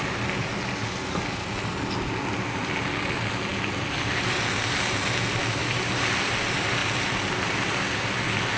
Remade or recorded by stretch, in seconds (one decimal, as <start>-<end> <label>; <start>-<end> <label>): 0.0-8.6 recorded